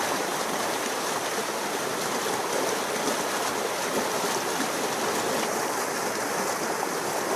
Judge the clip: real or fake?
real